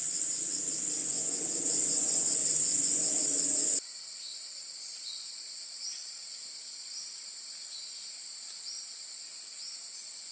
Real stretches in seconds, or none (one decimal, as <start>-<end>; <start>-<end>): 0.0-1.0; 3.1-9.5